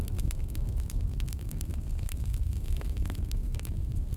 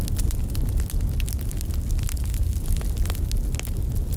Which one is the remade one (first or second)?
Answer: first